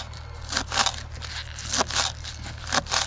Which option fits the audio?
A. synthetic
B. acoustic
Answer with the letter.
B